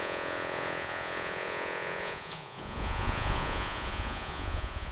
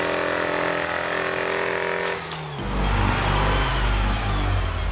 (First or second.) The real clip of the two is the second